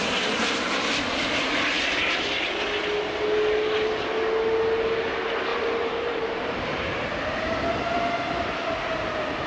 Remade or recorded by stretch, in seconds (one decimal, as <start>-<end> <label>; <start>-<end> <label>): 0.0-5.5 recorded; 5.5-7.5 remade; 7.5-9.5 recorded